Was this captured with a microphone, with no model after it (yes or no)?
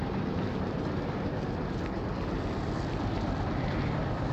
yes